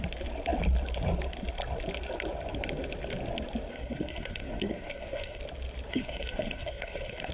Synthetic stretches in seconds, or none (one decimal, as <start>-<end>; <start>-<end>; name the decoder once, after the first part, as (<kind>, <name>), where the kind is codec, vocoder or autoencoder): 3.7-5.4 (codec, SNAC); 5.9-7.3